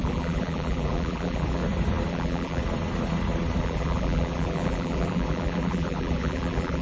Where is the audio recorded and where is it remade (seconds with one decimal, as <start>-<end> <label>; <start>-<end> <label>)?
0.0-1.6 remade; 1.6-2.1 recorded; 2.1-2.6 remade; 2.6-3.6 recorded; 3.6-6.8 remade